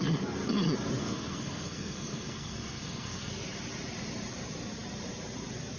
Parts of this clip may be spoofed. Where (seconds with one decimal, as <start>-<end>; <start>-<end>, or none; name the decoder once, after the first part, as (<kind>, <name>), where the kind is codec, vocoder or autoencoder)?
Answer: 1.0-3.3 (codec, SNAC)